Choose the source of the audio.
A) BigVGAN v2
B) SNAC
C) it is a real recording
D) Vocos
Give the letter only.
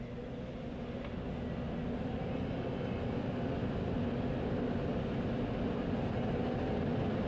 C